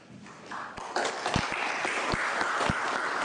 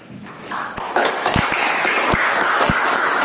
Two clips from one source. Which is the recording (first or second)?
first